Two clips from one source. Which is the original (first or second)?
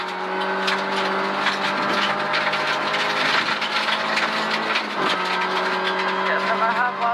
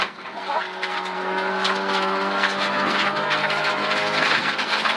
first